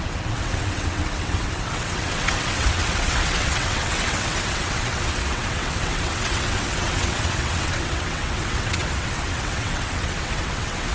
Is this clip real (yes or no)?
no